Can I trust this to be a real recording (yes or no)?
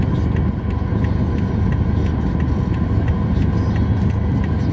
yes